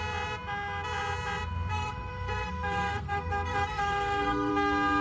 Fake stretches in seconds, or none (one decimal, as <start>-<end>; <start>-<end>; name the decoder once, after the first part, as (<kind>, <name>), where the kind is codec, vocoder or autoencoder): 1.7-4.5 (codec, SNAC)